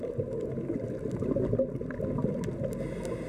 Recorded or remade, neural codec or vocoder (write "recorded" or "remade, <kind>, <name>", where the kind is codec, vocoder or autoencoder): recorded